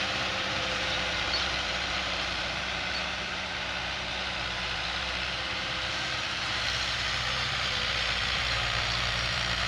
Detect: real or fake fake